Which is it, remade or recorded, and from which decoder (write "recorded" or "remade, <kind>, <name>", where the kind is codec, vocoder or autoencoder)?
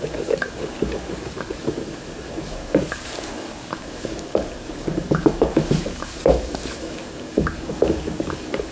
remade, codec, DAC